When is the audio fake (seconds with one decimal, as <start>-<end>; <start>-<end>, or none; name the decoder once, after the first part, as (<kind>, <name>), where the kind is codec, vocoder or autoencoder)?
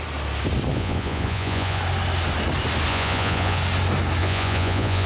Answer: 0.7-1.8 (vocoder, Vocos); 2.9-3.6; 4.2-5.1